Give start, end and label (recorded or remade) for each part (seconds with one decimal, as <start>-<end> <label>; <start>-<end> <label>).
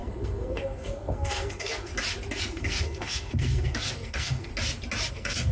0.0-1.9 remade; 1.9-2.4 recorded; 2.4-4.5 remade; 4.5-5.1 recorded; 5.1-5.5 remade